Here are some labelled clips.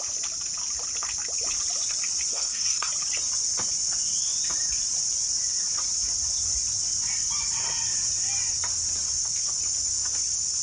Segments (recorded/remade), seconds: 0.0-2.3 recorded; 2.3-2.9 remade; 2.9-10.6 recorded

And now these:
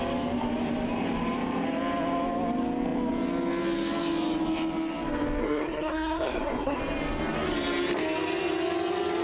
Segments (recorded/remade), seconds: 0.0-5.4 recorded; 5.4-6.8 remade; 6.8-9.2 recorded

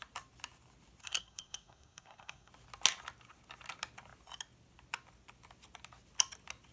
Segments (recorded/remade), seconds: 0.0-1.0 recorded; 1.0-2.5 remade; 2.5-6.7 recorded

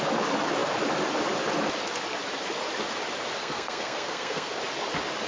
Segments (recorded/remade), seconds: 0.0-3.4 recorded; 3.4-4.6 remade; 4.6-5.3 recorded

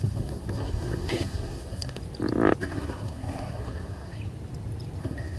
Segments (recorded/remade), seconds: 0.0-2.0 remade; 2.0-2.6 recorded; 2.6-4.2 remade; 4.2-5.0 recorded; 5.0-5.4 remade

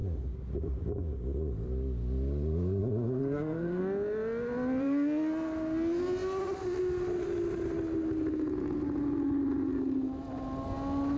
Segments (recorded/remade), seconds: 0.0-3.2 recorded; 3.2-3.8 remade; 3.8-11.2 recorded

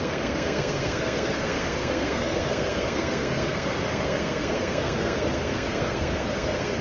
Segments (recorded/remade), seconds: 0.0-6.8 remade

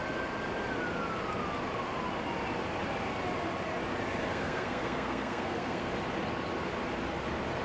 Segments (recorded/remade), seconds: 0.0-4.3 recorded; 4.3-5.9 remade; 5.9-7.6 recorded